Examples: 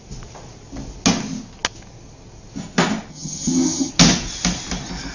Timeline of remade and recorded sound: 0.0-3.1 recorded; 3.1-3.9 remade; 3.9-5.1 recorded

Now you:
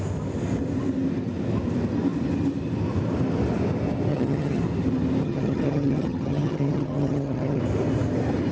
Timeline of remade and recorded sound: 0.0-4.1 recorded; 4.1-4.6 remade; 4.6-5.2 recorded; 5.2-7.6 remade; 7.6-8.5 recorded

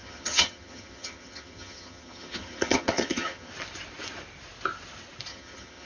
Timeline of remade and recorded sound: 0.0-3.5 remade; 3.5-5.3 recorded; 5.3-5.9 remade

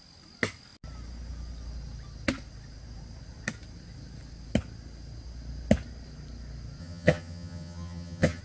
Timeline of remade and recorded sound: 0.0-6.8 recorded; 6.8-8.4 remade

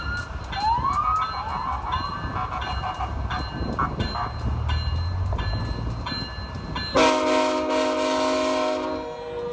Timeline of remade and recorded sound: 0.0-9.5 recorded

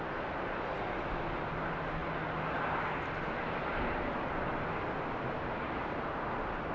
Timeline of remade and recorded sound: 0.0-6.7 recorded